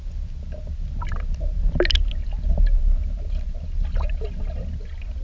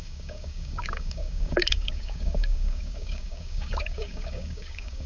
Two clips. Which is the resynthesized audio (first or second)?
second